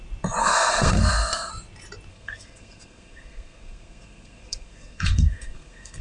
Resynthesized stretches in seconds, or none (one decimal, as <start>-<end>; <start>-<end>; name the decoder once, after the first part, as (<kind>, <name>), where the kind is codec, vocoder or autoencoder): 0.4-1.5 (codec, SNAC); 2.1-6.0